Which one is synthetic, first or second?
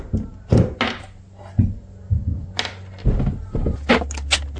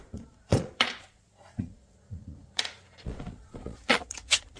second